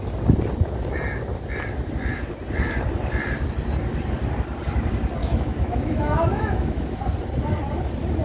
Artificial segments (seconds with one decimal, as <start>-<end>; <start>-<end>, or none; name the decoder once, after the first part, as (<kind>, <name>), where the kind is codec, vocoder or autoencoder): 5.2-7.0 (autoencoder, DAC-VAE)